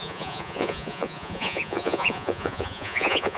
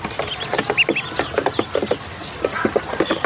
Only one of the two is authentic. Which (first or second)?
second